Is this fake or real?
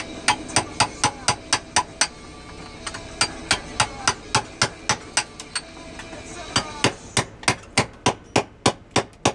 real